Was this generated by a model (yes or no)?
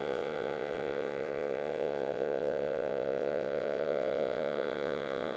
yes